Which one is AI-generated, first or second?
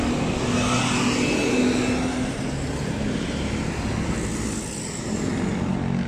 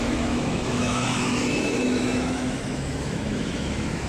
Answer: second